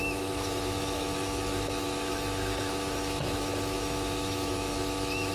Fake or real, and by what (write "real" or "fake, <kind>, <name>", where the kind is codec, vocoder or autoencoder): fake, autoencoder, DAC-VAE